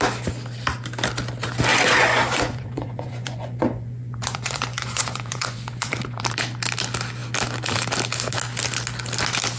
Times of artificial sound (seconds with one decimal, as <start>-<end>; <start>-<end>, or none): 1.7-6.2